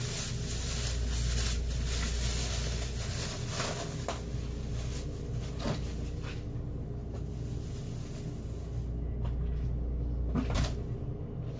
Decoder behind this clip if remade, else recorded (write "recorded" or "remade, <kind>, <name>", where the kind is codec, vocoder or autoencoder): recorded